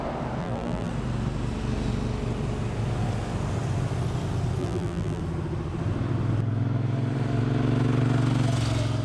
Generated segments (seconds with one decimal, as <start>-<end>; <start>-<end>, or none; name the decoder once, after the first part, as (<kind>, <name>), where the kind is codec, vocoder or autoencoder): 0.4-0.9 (vocoder, BigVGAN v2); 4.6-5.2